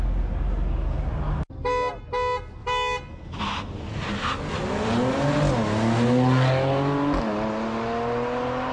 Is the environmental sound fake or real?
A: real